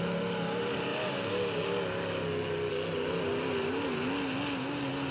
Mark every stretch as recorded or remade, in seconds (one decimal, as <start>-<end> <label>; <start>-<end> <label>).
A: 0.0-5.1 recorded